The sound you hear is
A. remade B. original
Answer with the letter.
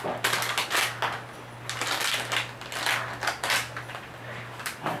B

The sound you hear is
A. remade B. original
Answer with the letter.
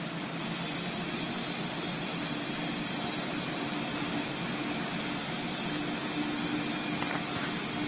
B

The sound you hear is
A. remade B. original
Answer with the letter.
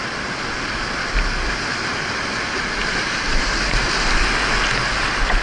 B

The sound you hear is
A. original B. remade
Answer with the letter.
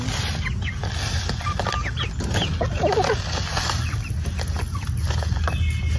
A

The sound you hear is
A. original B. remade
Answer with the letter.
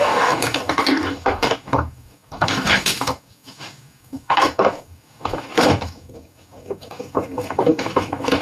B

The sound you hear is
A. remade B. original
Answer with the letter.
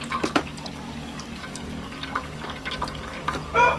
A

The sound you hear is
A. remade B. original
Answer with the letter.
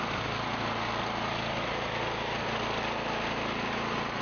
B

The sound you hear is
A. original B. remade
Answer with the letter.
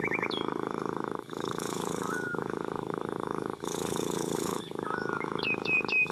B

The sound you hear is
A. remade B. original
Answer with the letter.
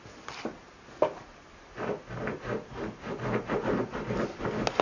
B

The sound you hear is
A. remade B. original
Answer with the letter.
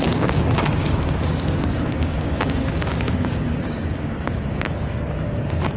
A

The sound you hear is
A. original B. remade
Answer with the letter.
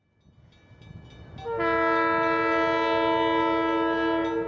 A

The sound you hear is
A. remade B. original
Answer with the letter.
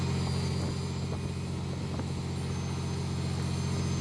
B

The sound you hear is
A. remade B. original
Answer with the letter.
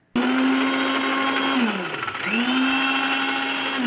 B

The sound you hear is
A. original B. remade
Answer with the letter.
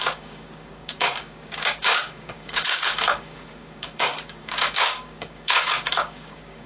B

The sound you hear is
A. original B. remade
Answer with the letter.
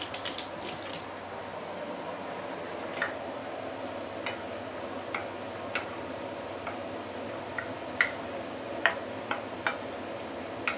A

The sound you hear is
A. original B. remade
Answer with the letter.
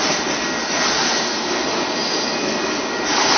A